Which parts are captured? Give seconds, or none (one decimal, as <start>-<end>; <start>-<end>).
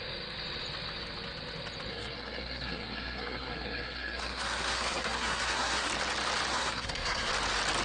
0.0-1.9; 5.9-6.5; 7.3-7.8